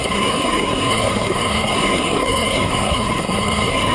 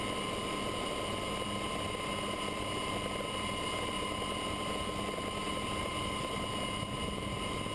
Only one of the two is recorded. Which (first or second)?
second